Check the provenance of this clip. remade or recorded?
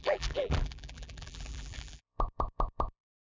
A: remade